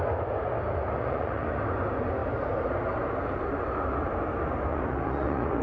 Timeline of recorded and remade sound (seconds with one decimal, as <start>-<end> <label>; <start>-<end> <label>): 0.0-1.0 recorded; 1.0-1.6 remade; 1.6-4.7 recorded; 4.7-5.6 remade

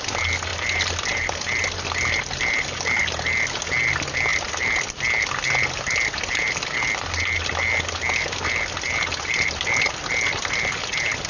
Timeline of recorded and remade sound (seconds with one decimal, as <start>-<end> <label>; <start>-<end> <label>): 0.0-11.3 recorded

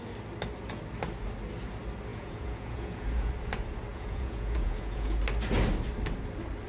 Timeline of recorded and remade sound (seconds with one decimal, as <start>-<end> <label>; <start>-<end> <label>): 0.0-2.1 recorded; 2.1-3.3 remade; 3.3-3.9 recorded; 3.9-5.2 remade; 5.2-6.7 recorded

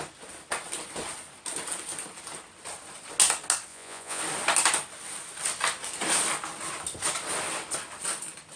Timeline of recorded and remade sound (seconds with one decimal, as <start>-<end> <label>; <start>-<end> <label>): 0.0-3.7 recorded; 3.7-4.2 remade; 4.2-8.6 recorded

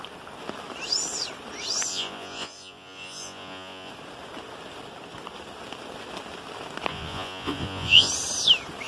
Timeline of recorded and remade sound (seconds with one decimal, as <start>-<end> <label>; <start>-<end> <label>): 0.0-1.9 recorded; 1.9-3.9 remade; 3.9-6.9 recorded; 6.9-8.1 remade; 8.1-8.9 recorded

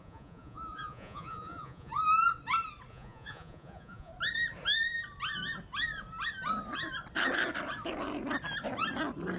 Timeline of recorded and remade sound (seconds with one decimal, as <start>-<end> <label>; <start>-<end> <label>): 0.0-1.9 remade; 1.9-2.9 recorded; 2.9-4.1 remade; 4.1-9.4 recorded